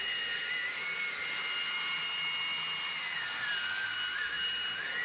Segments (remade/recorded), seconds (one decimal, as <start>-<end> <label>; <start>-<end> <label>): 0.0-5.0 recorded

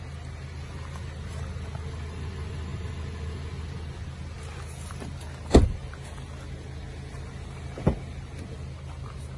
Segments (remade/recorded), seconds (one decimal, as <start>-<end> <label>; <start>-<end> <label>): 0.0-9.4 recorded